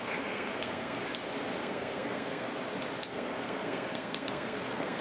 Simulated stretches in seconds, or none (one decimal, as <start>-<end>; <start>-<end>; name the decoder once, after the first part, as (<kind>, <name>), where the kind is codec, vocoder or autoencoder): 0.0-1.0 (codec, SNAC); 1.6-2.5; 3.1-5.0